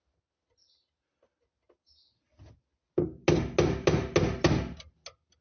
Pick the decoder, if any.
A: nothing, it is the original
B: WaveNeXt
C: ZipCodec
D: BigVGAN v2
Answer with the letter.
A